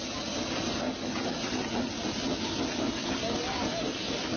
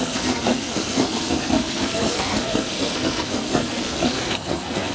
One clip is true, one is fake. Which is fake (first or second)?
second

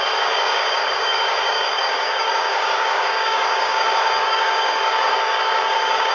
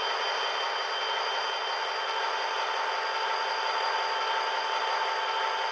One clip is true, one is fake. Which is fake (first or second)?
first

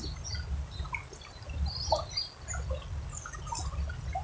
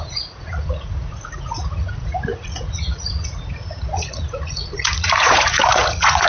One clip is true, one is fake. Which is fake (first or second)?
second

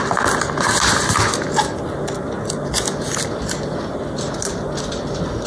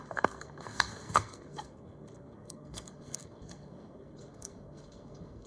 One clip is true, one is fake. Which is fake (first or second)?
second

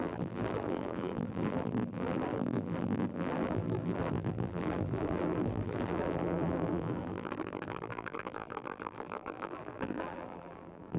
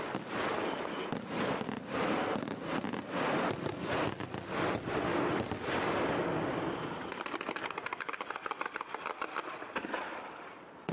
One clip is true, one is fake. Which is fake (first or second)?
first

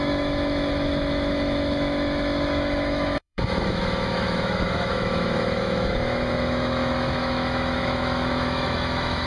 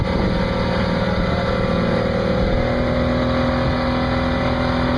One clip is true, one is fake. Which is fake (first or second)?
first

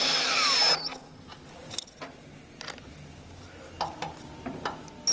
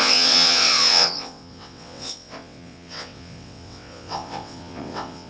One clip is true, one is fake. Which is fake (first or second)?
second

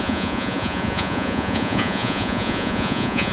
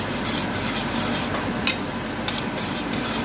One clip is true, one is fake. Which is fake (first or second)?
first